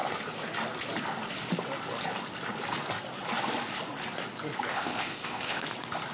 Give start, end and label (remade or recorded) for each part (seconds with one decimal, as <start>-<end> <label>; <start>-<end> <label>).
0.0-4.7 recorded; 4.7-5.6 remade; 5.6-6.1 recorded